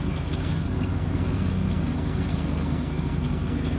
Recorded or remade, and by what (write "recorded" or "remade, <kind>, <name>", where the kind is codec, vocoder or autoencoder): remade, codec, SNAC